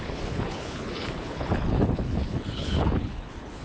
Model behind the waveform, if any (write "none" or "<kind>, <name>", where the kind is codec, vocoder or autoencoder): codec, HILCodec